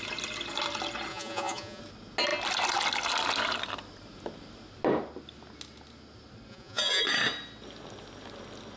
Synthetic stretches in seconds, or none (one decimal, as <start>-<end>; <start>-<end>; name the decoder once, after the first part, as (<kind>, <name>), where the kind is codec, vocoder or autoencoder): 1.1-1.8 (vocoder, Vocos); 6.5-7.0